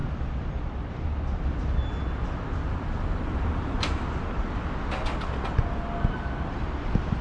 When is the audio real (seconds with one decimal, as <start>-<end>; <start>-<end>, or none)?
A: 0.0-7.2